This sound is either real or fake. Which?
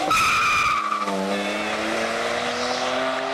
real